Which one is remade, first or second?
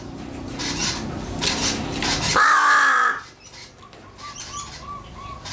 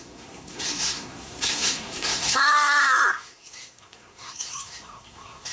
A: second